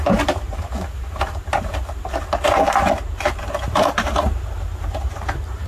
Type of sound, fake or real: fake